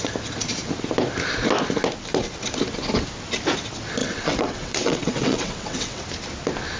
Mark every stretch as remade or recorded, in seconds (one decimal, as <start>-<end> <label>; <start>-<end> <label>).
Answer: 0.0-4.0 recorded; 4.0-6.0 remade; 6.0-6.8 recorded